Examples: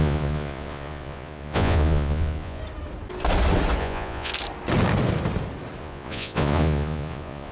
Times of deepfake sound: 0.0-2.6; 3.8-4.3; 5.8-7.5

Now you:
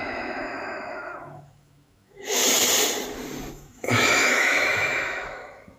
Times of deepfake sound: 0.0-2.4; 3.5-5.8